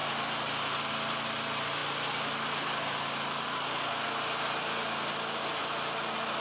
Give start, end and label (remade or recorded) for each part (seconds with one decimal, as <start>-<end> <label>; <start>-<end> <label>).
0.0-6.4 recorded